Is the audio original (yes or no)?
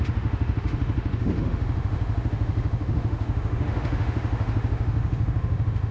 no